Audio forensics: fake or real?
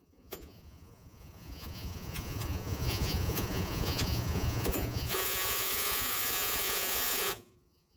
fake